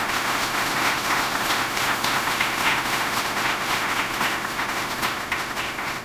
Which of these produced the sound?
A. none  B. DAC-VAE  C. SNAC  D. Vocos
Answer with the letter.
B